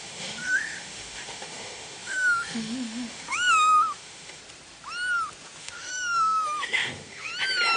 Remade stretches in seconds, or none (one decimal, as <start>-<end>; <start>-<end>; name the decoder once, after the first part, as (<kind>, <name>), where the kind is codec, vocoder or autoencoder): 0.0-4.4 (autoencoder, DAC-VAE); 5.6-7.3